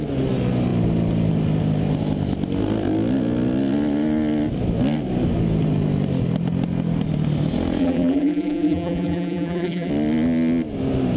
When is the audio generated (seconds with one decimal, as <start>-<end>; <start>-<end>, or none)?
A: 7.8-9.9